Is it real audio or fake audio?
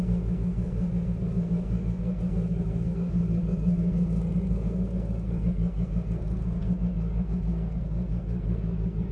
fake